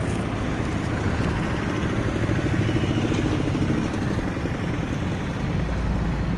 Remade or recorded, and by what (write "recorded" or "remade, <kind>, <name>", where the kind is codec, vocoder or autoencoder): recorded